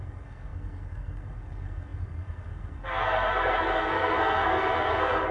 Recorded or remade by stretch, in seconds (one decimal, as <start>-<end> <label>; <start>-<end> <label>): 0.0-5.3 remade